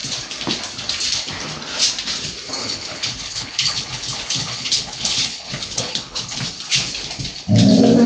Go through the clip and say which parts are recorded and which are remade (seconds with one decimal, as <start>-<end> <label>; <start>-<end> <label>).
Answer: 0.0-2.6 recorded; 2.6-6.4 remade; 6.4-8.1 recorded